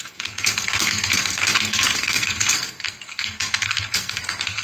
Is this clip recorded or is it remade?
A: remade